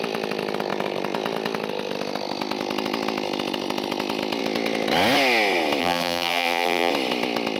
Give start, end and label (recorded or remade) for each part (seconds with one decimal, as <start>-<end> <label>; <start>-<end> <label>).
0.0-5.8 recorded; 5.8-6.9 remade; 6.9-7.6 recorded